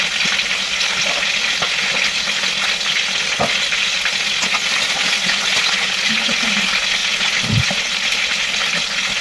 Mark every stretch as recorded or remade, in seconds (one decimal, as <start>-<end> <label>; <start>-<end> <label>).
0.0-9.2 recorded